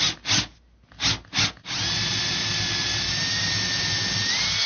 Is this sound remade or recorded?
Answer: recorded